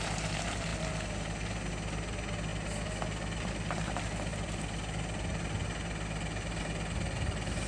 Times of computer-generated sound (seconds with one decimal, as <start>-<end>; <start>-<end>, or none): none